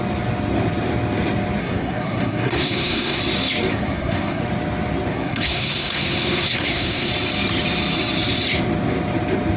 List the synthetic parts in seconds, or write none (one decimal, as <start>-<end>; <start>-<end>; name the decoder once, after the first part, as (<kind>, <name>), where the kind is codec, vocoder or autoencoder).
1.6-3.2 (codec, SNAC); 3.7-4.4; 5.1-7.1